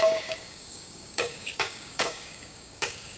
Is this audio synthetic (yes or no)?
yes